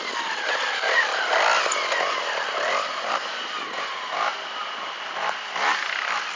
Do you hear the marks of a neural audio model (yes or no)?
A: no